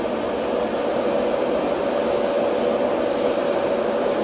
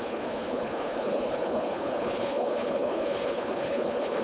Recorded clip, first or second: first